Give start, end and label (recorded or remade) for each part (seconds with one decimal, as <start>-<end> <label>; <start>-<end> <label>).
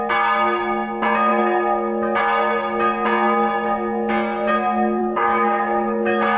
0.0-5.0 recorded; 5.0-6.4 remade